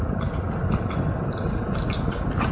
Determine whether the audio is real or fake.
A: real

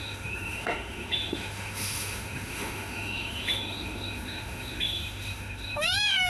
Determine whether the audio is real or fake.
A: fake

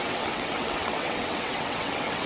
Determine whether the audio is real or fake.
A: fake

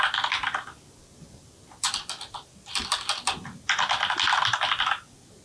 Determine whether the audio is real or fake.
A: real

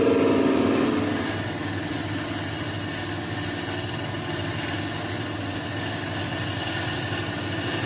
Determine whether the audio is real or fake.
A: real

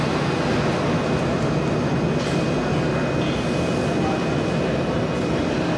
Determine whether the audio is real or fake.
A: real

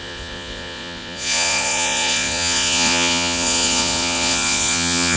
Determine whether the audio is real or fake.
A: fake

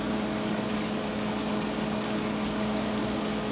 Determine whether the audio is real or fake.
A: fake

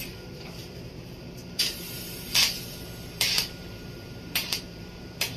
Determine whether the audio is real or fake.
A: fake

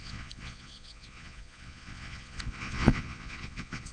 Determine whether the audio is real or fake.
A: fake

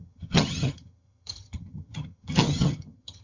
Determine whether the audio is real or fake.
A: fake